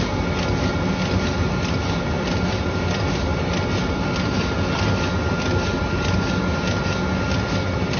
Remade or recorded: recorded